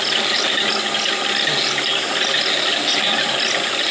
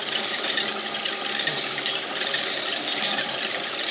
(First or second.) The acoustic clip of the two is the first